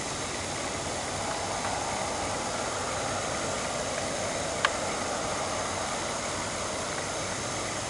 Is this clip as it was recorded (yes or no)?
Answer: yes